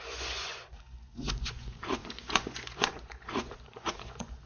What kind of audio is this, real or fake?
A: fake